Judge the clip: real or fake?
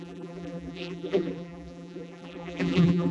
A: fake